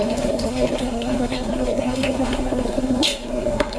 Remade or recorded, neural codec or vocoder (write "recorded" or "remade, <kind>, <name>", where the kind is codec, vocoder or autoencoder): remade, codec, SNAC